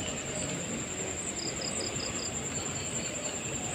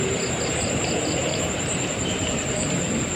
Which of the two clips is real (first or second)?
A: first